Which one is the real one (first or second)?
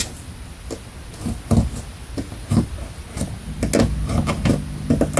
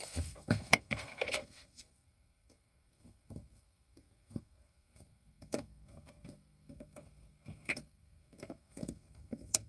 first